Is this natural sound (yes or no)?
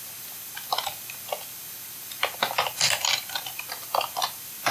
yes